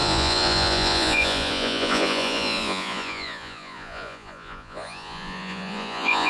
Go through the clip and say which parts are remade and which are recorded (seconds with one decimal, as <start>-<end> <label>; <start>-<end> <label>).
0.0-6.3 remade